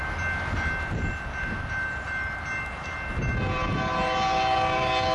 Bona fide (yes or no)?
yes